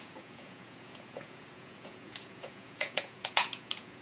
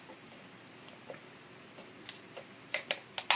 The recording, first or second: second